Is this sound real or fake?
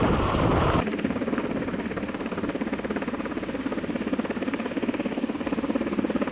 real